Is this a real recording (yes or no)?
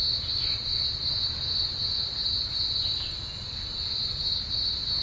yes